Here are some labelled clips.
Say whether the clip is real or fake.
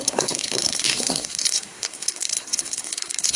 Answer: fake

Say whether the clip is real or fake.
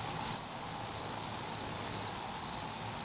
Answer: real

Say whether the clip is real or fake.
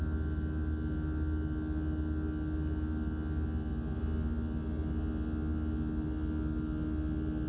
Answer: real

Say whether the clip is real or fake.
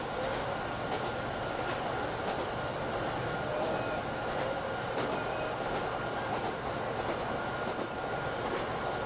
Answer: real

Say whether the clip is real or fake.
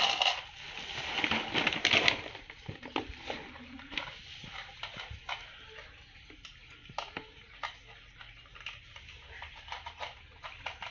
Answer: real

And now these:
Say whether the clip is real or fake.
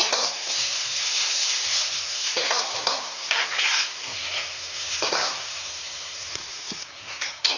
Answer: fake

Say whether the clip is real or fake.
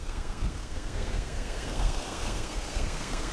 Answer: fake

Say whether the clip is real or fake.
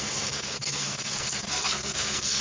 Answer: fake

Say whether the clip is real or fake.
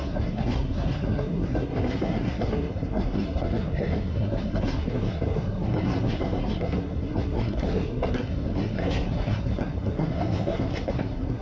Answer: fake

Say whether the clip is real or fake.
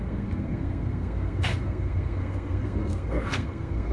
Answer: fake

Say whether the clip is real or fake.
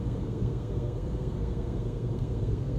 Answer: fake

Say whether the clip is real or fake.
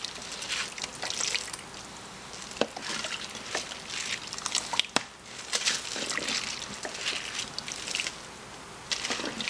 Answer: real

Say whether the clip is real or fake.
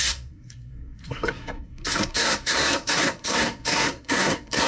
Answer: fake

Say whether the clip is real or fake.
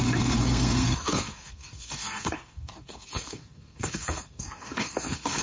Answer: fake